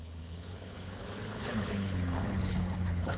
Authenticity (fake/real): fake